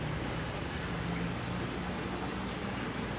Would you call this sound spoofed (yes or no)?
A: no